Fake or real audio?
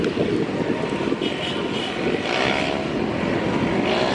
real